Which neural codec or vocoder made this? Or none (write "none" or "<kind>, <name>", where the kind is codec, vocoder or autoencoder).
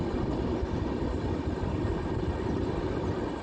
none